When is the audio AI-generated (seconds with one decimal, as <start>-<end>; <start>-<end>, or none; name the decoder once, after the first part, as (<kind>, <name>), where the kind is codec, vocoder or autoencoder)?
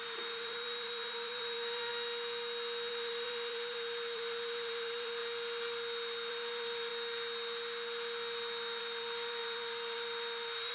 0.0-1.9 (vocoder, BigVGAN v2); 2.9-5.2; 6.3-6.9; 8.8-10.7